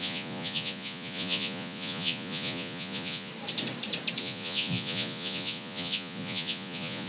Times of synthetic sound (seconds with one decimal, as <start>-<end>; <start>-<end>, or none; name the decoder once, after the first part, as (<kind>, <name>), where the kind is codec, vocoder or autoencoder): 0.0-3.3 (vocoder, Vocos); 4.2-7.1